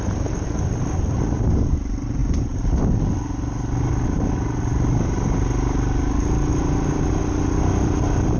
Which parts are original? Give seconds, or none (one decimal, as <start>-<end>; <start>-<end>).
0.0-8.4